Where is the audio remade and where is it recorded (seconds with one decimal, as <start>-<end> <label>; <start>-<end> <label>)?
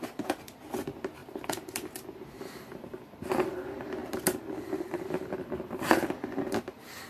0.0-7.1 recorded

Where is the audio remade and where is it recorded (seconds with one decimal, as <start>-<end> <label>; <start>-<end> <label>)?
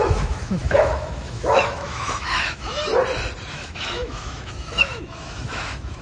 0.0-2.9 remade; 2.9-3.5 recorded; 3.5-6.0 remade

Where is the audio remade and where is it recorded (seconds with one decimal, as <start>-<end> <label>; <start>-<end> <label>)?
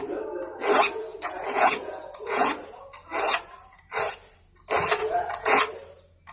0.0-1.1 recorded; 1.1-2.5 remade; 2.5-5.0 recorded; 5.0-5.6 remade; 5.6-6.3 recorded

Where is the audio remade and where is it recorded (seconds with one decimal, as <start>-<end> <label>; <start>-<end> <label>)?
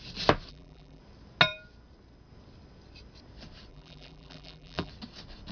0.0-0.5 recorded; 0.5-1.0 remade; 1.0-3.7 recorded; 3.7-4.9 remade; 4.9-5.5 recorded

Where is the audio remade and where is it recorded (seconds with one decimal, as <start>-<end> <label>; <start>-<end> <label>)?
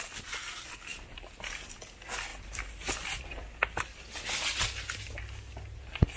0.0-6.2 recorded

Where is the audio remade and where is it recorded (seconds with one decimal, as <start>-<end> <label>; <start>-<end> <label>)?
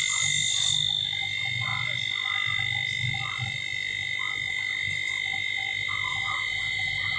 0.0-6.1 recorded; 6.1-7.2 remade